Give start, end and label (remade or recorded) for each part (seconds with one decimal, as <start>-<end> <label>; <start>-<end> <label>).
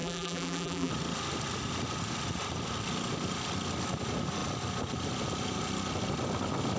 0.0-0.9 remade; 0.9-6.8 recorded